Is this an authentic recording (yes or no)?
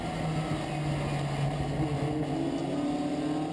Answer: yes